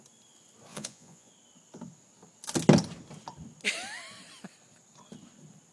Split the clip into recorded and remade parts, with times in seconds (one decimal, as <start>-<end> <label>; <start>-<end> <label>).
0.0-0.7 recorded; 0.7-1.3 remade; 1.3-5.7 recorded